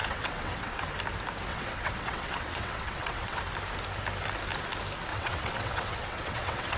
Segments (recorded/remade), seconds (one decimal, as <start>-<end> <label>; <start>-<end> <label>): 0.0-0.8 remade; 0.8-1.5 recorded; 1.5-3.4 remade; 3.4-5.1 recorded; 5.1-6.8 remade

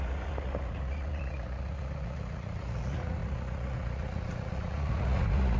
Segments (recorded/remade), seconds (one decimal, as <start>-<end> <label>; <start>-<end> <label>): 0.0-5.6 remade

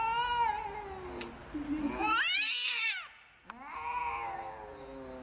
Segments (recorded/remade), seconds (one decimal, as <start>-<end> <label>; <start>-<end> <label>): 0.0-5.2 recorded